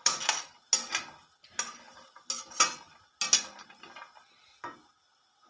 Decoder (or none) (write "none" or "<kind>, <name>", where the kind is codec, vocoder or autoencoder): none